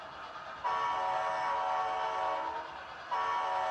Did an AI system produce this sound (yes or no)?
no